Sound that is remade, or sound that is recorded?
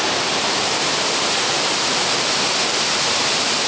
remade